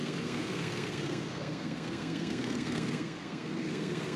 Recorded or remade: remade